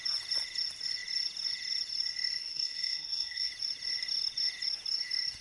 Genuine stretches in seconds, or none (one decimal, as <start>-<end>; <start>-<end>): 0.0-2.4; 3.5-5.4